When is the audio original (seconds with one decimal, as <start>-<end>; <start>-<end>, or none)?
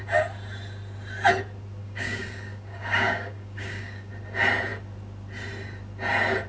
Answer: 0.0-1.8; 4.1-6.5